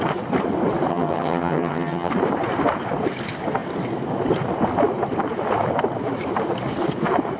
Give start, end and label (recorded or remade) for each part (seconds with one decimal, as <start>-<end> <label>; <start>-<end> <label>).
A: 0.0-0.9 recorded; 0.9-2.1 remade; 2.1-7.4 recorded